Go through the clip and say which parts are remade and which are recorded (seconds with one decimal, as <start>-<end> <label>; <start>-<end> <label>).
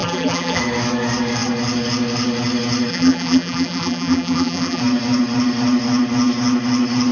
0.0-0.6 remade; 0.6-2.9 recorded; 2.9-4.8 remade; 4.8-7.1 recorded